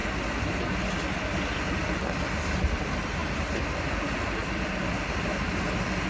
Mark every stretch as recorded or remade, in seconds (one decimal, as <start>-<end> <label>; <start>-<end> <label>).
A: 0.0-6.1 recorded